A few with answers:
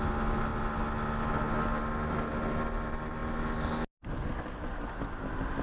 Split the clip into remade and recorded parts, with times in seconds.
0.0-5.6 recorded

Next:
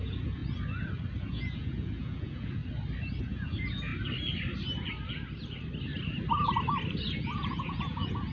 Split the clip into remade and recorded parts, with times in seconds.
0.0-0.4 remade; 0.4-1.2 recorded; 1.2-2.6 remade; 2.6-3.2 recorded; 3.2-3.9 remade; 3.9-7.2 recorded; 7.2-8.3 remade

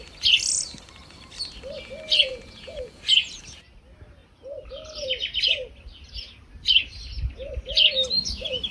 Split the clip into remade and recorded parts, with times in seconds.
0.0-2.3 recorded; 2.3-3.4 remade; 3.4-8.7 recorded